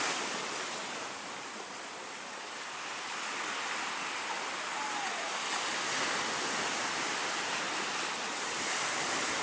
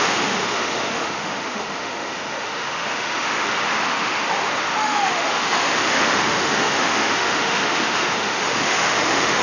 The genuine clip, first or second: first